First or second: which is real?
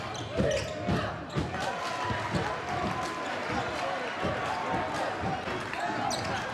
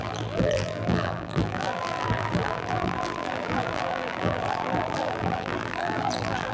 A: first